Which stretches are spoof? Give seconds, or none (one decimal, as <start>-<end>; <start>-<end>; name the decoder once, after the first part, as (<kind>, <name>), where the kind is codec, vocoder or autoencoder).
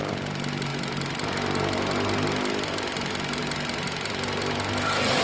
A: none